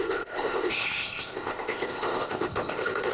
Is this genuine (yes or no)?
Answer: no